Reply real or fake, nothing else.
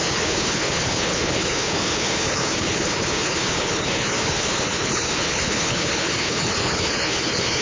fake